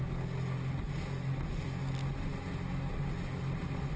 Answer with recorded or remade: recorded